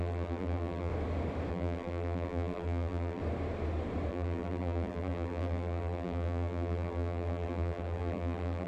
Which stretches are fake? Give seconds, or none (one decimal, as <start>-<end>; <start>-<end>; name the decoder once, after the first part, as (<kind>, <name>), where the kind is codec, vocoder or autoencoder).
0.0-0.9 (vocoder, BigVGAN v2); 1.5-3.2; 4.1-8.7

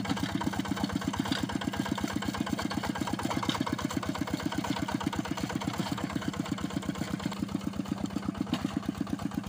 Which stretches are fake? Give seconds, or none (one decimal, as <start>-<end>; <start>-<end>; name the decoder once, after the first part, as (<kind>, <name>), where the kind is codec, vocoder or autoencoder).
5.8-6.3 (codec, DAC)

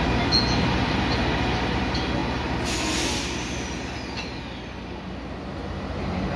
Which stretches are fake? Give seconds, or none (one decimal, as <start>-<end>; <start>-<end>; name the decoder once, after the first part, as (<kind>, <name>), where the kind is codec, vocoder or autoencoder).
none